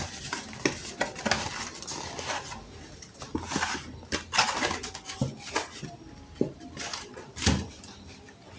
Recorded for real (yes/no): yes